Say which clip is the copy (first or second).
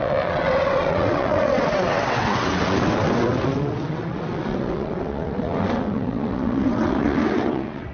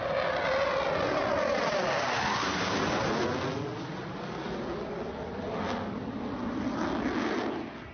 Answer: first